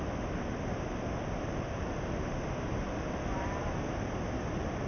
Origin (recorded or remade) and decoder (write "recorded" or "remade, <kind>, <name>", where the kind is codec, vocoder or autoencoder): recorded